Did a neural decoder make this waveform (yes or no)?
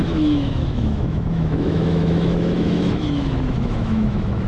yes